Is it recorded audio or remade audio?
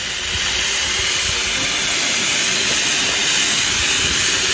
recorded